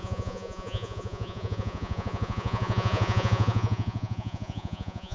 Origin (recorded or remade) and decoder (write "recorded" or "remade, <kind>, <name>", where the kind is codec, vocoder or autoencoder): remade, vocoder, Vocos